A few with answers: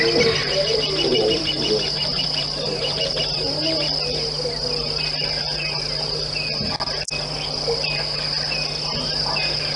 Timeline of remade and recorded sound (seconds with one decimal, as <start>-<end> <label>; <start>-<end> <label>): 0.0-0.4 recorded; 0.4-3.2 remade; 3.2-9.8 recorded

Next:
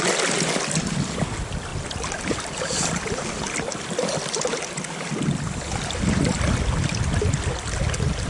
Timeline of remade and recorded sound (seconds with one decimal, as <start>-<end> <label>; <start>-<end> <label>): 0.0-8.3 recorded

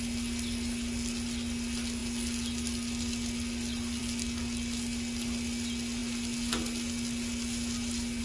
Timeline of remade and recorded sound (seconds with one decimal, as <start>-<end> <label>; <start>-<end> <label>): 0.0-8.2 recorded

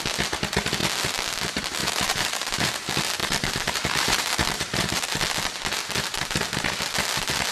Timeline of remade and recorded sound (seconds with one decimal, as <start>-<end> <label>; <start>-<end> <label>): 0.0-1.8 recorded; 1.8-2.7 remade; 2.7-3.2 recorded; 3.2-5.3 remade; 5.3-7.5 recorded

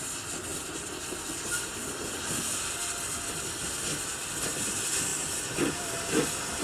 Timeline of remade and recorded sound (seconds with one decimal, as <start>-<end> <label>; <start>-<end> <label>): 0.0-6.6 recorded

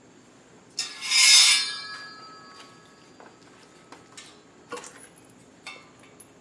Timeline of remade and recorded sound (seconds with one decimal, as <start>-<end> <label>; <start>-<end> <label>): 0.0-6.4 recorded

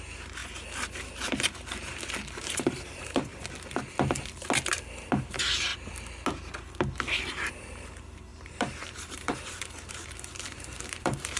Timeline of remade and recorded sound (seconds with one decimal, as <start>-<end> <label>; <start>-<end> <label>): 0.0-0.4 remade; 0.4-2.4 recorded; 2.4-3.3 remade; 3.3-5.2 recorded; 5.2-5.7 remade; 5.7-7.2 recorded; 7.2-11.4 remade